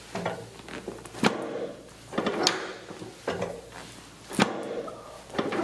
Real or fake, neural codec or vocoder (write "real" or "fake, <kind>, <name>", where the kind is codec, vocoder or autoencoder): real